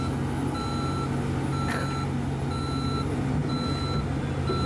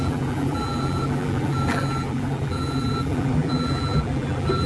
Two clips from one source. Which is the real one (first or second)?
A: first